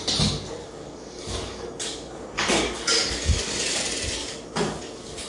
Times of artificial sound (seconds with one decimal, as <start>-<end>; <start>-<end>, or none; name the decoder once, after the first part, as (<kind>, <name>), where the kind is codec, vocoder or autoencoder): 0.6-3.8 (codec, DAC); 4.2-5.3

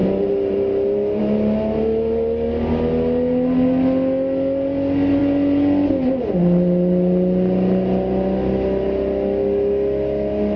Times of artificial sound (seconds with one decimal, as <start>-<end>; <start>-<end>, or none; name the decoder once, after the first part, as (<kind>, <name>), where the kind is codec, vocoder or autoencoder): none

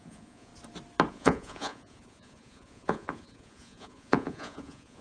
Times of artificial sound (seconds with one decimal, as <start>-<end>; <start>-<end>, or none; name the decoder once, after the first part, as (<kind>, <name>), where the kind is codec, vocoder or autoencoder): 0.0-0.5 (vocoder, Vocos); 1.1-5.0

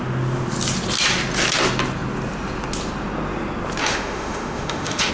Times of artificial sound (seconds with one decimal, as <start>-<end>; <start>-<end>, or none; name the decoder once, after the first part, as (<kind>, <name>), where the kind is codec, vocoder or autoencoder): 3.8-5.1 (autoencoder, DAC-VAE)